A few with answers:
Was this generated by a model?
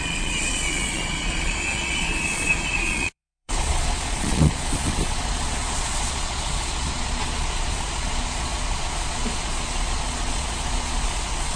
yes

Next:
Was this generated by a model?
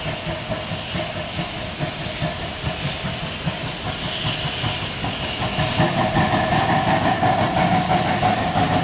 no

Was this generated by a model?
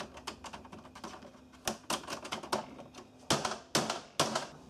no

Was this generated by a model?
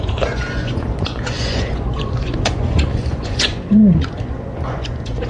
yes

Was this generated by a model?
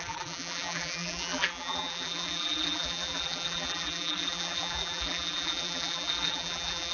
yes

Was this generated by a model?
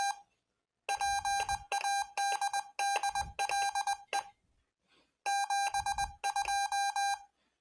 no